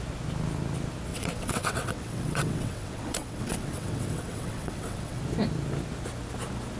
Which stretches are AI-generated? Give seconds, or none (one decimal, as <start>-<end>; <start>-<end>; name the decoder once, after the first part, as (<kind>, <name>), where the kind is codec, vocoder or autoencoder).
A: 1.1-5.2 (vocoder, WaveNeXt)